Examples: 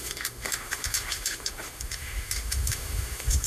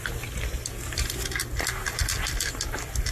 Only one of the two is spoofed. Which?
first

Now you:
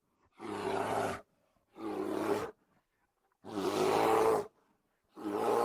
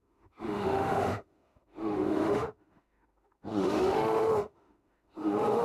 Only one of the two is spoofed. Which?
second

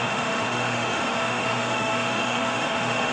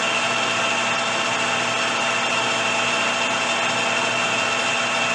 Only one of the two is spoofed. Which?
first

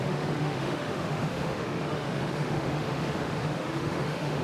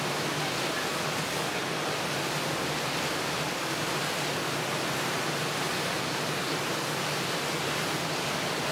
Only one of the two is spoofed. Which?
first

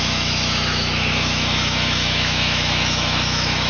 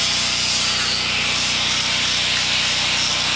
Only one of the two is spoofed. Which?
first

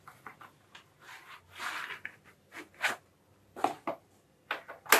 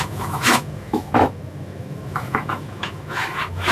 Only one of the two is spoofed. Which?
second